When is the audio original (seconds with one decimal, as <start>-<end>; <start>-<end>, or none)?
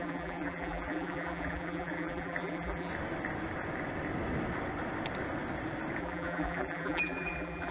2.9-6.0